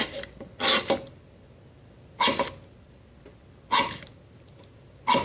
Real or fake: real